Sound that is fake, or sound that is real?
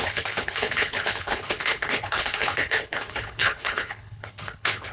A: fake